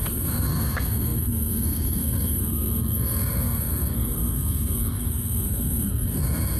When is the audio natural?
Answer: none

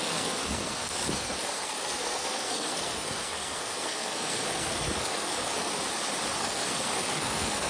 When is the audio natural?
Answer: 5.7-6.4

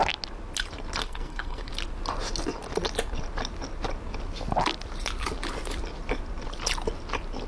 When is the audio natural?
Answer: 0.0-1.0; 1.7-7.5

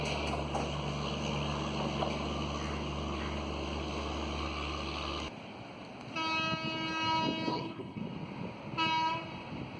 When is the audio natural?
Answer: 0.0-7.5; 8.0-9.8

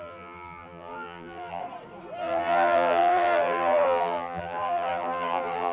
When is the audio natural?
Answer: 1.6-2.2

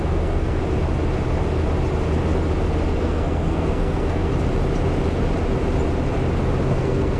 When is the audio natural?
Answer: 0.6-3.0; 4.3-6.7

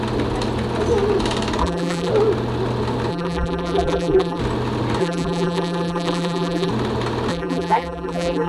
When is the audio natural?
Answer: 0.0-1.6; 2.1-3.1; 4.4-5.0; 6.7-7.3